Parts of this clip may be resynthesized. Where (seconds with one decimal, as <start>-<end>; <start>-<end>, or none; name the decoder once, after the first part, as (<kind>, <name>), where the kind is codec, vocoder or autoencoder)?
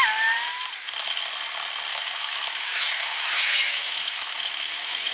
1.9-5.1 (autoencoder, DAC-VAE)